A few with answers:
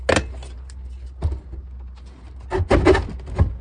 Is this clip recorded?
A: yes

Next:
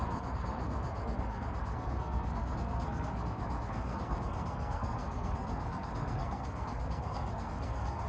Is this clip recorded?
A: no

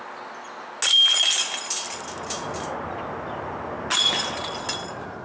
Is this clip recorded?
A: yes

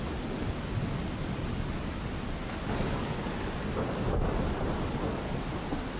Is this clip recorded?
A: yes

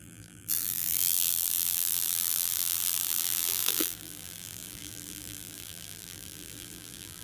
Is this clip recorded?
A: no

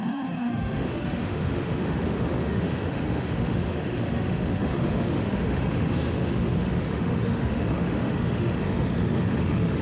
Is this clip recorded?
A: no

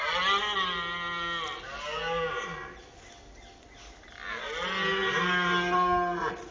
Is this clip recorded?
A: yes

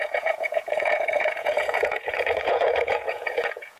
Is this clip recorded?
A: no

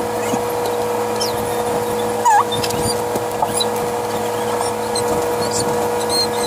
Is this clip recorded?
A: yes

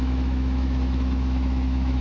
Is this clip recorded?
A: no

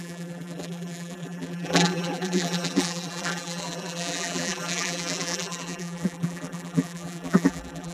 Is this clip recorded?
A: no